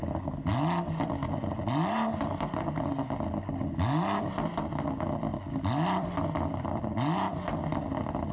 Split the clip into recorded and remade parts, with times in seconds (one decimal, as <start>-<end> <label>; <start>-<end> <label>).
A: 0.0-8.3 recorded